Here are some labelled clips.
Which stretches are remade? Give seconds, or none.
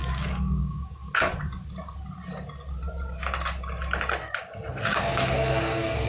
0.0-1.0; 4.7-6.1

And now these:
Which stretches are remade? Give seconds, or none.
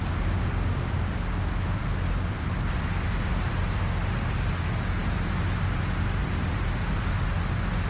6.2-7.0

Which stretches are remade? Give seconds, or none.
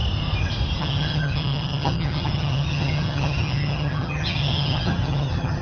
0.8-5.6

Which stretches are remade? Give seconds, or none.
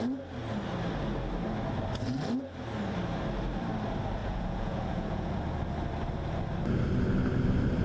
4.2-5.4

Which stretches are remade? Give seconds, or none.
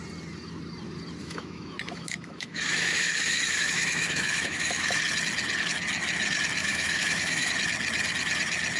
1.2-5.0; 6.6-7.5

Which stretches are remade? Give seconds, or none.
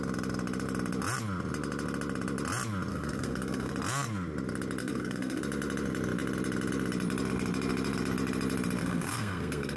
2.9-3.7; 4.8-5.4; 8.8-9.8